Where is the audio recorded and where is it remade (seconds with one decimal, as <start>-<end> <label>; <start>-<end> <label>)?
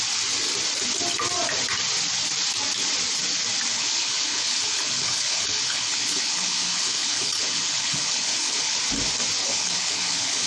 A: 0.0-3.7 recorded; 3.7-8.8 remade; 8.8-9.4 recorded; 9.4-10.5 remade